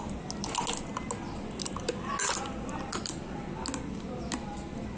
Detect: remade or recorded recorded